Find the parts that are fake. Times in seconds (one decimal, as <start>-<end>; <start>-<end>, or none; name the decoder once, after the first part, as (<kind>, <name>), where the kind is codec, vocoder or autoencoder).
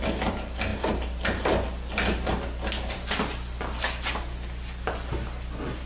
none